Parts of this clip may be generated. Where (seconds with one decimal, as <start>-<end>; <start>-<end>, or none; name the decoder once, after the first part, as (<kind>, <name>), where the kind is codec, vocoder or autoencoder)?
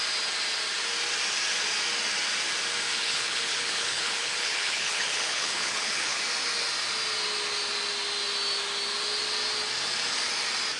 2.9-6.2 (codec, HILCodec)